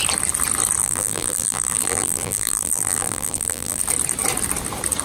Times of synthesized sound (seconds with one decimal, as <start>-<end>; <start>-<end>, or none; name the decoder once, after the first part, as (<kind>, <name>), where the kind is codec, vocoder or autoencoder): 0.8-3.8 (vocoder, BigVGAN v2)